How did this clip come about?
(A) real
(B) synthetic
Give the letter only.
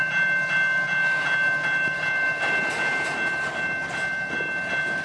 A